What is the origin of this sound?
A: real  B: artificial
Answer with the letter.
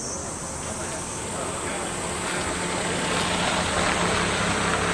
A